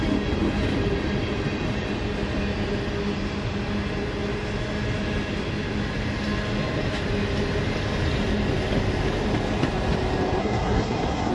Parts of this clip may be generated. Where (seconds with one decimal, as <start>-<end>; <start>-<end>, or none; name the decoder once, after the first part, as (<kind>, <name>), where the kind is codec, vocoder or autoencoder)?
10.4-11.3 (codec, SNAC)